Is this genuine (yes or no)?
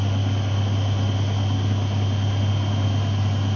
yes